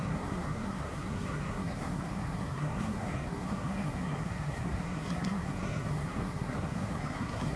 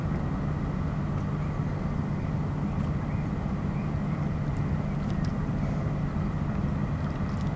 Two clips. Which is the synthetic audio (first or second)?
first